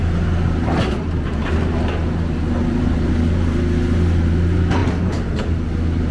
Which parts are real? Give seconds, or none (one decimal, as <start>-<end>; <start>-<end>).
0.8-2.6; 3.1-6.1